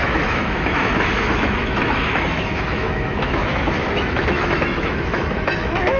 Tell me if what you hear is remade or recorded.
remade